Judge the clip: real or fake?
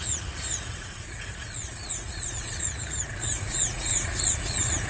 fake